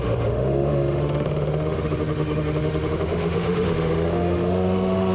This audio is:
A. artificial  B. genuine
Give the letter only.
A